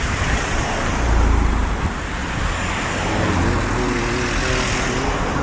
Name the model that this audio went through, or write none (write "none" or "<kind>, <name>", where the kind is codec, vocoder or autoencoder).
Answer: none